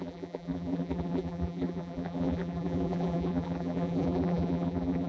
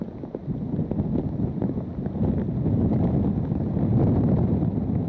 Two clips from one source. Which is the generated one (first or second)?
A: first